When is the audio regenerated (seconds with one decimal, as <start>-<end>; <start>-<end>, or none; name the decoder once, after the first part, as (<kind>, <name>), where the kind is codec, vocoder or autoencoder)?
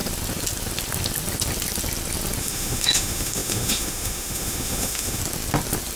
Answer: 2.4-5.2 (autoencoder, DAC-VAE)